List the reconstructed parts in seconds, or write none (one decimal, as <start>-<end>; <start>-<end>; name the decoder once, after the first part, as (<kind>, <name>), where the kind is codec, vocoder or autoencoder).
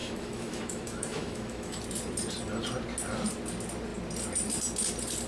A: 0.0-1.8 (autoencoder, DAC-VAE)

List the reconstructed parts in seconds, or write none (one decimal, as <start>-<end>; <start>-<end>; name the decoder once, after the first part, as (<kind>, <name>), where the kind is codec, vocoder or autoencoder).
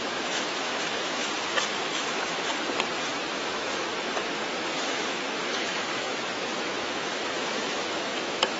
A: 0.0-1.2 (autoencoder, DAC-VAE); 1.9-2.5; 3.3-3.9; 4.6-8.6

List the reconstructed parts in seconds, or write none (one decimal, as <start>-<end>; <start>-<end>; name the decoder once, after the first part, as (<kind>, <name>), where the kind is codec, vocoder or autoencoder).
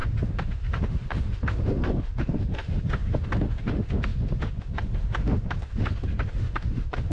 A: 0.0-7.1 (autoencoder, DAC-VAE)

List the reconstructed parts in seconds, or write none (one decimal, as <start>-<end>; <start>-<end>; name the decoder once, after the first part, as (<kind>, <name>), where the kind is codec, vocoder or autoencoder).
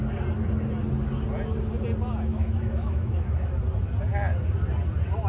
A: 2.3-3.5 (autoencoder, DAC-VAE)